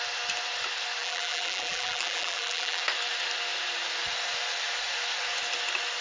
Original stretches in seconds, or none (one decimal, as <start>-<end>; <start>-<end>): 0.0-1.0; 2.8-6.0